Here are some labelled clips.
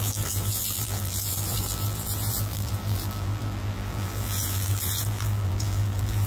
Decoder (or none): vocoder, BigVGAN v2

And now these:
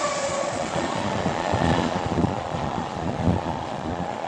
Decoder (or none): vocoder, Vocos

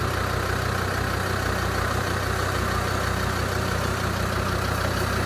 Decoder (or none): none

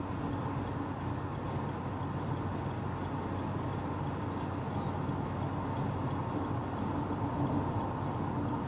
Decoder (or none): none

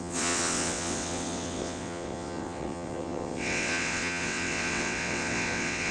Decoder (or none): vocoder, WaveNeXt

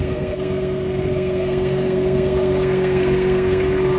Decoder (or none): codec, SNAC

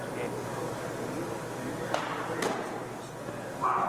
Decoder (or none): none